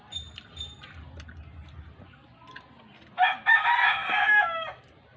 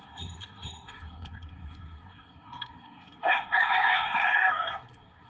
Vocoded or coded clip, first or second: second